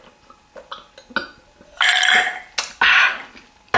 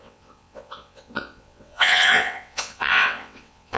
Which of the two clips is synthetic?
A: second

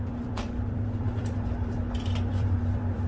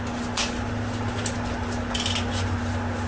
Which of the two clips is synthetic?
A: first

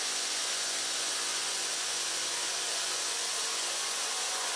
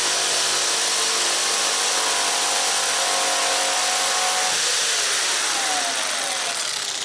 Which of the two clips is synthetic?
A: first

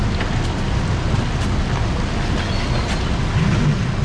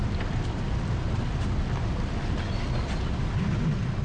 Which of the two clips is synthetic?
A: second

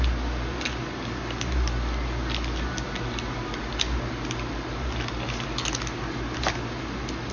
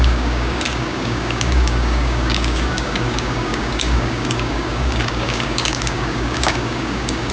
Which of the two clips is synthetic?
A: second